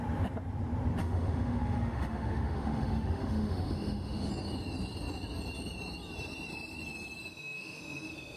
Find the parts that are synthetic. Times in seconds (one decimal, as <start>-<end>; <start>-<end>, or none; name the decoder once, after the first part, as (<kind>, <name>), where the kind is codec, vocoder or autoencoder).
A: 1.0-4.3 (autoencoder, DAC-VAE); 7.2-8.4